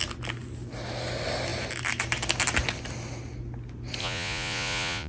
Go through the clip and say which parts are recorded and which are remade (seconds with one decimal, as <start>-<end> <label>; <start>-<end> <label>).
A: 0.0-4.0 recorded; 4.0-5.1 remade